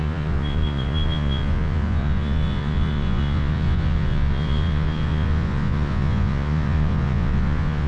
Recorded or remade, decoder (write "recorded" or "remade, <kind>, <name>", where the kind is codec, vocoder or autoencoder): remade, vocoder, Vocos